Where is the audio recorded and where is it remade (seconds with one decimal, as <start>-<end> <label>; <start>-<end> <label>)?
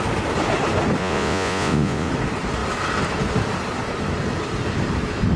0.0-1.0 recorded; 1.0-2.1 remade; 2.1-5.4 recorded